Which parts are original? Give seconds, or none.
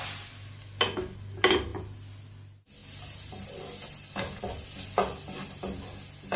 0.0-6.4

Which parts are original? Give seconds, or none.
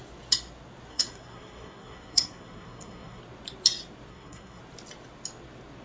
0.0-0.9; 3.2-4.1; 4.6-5.8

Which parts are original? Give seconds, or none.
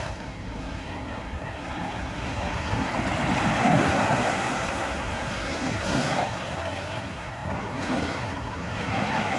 2.9-3.6